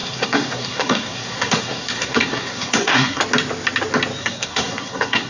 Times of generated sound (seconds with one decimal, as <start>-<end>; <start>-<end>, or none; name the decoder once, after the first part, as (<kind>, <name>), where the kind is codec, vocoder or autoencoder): 0.0-3.2 (codec, SNAC); 4.2-5.3